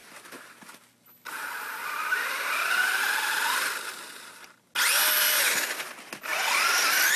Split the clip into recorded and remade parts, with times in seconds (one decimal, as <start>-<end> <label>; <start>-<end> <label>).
0.0-7.2 recorded